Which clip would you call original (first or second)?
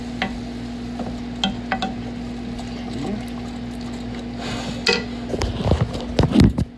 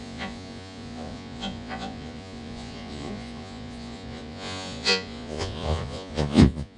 first